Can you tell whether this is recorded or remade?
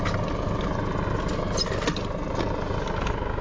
recorded